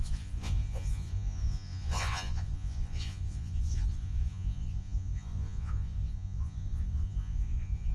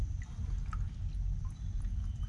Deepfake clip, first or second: first